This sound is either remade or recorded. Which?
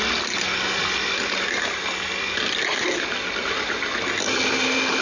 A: recorded